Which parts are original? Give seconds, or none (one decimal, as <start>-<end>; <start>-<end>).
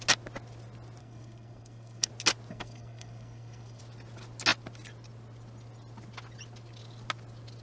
0.0-1.0; 2.1-2.5; 3.8-7.6